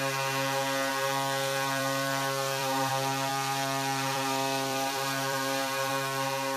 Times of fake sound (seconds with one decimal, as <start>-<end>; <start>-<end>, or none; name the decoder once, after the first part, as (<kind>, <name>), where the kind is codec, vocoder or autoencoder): 0.9-2.9 (vocoder, BigVGAN v2); 3.3-5.9